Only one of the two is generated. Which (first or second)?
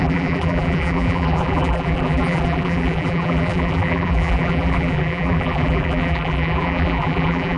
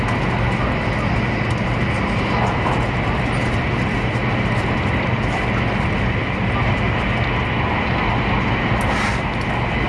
first